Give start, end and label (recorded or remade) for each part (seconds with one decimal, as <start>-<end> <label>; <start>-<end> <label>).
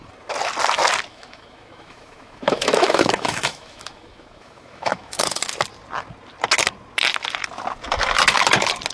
0.0-1.1 recorded; 1.1-5.4 remade; 5.4-8.9 recorded